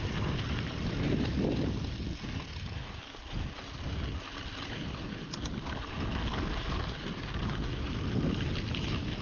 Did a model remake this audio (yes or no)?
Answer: no